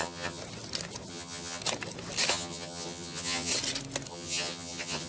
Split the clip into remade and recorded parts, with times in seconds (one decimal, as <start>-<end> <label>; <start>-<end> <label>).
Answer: 0.0-0.4 remade; 0.4-1.1 recorded; 1.1-1.6 remade; 1.6-2.3 recorded; 2.3-3.5 remade; 3.5-4.1 recorded; 4.1-5.1 remade